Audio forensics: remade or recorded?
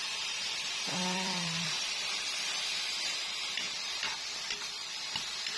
remade